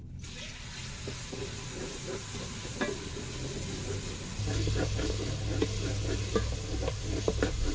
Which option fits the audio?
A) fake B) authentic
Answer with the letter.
B